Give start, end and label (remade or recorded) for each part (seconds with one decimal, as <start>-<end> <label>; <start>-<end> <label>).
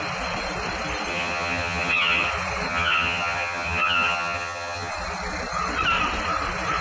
0.0-1.1 recorded; 1.1-2.3 remade; 2.3-2.7 recorded; 2.7-4.9 remade; 4.9-6.8 recorded